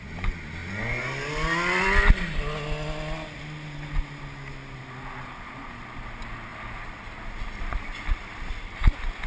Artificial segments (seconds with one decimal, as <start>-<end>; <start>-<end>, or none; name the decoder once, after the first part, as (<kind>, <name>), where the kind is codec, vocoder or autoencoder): none